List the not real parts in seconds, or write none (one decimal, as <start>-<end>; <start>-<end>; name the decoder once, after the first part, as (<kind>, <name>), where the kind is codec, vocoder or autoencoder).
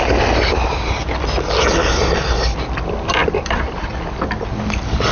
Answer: none